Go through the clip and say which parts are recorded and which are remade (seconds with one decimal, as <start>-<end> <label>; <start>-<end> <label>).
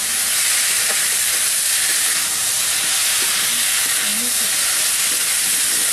0.0-5.9 recorded